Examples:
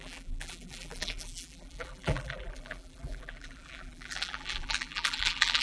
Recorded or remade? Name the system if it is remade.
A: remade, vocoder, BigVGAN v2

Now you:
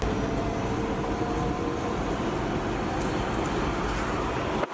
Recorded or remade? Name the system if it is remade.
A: recorded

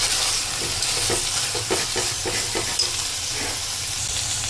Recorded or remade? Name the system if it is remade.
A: recorded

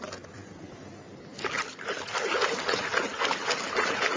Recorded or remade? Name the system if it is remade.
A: recorded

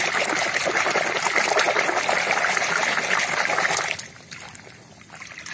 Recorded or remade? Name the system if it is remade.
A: recorded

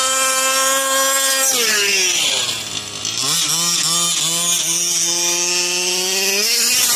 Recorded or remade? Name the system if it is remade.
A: recorded